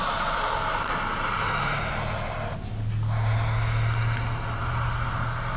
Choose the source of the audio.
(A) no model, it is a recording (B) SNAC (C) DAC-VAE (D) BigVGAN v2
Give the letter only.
A